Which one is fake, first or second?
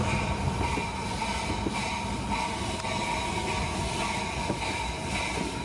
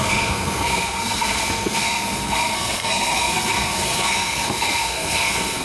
second